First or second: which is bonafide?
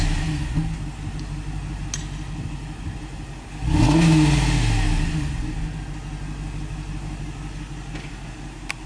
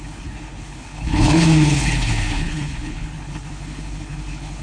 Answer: first